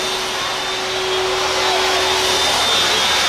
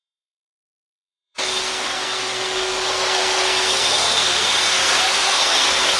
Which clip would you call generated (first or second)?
second